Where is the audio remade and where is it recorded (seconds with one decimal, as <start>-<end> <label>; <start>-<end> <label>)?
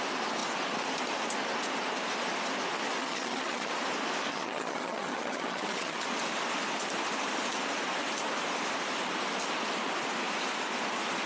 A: 0.0-3.0 recorded; 3.0-3.7 remade; 3.7-4.3 recorded; 4.3-6.0 remade; 6.0-11.3 recorded